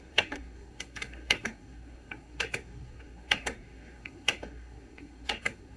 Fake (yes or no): yes